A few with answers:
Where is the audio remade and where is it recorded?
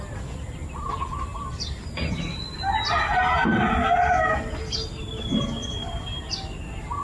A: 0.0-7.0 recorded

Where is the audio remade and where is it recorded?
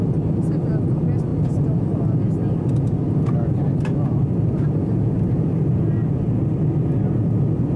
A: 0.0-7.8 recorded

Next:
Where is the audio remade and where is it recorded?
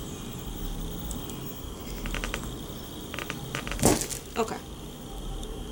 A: 0.0-1.8 remade; 1.8-5.1 recorded; 5.1-5.7 remade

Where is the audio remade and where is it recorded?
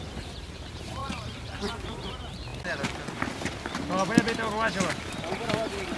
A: 0.0-2.5 remade; 2.5-5.5 recorded; 5.5-6.0 remade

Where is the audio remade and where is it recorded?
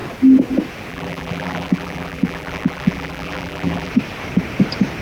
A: 0.0-0.9 recorded; 0.9-3.9 remade; 3.9-5.0 recorded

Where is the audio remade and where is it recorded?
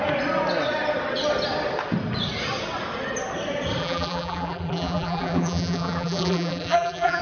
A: 0.0-3.8 recorded; 3.8-7.2 remade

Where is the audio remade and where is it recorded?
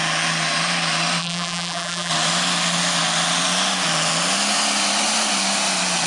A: 0.0-1.2 recorded; 1.2-2.1 remade; 2.1-6.1 recorded